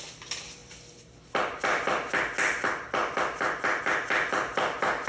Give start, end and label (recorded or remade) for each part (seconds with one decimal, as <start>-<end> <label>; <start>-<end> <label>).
0.0-5.1 recorded